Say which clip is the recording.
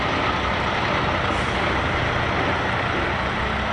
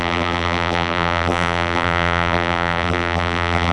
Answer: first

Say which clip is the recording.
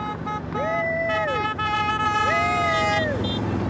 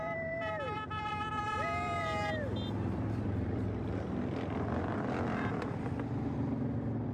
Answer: first